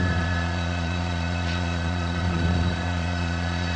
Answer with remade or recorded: remade